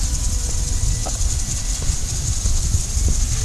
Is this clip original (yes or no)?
yes